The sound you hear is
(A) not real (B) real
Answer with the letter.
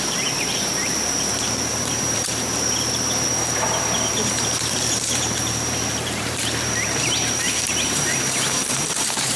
A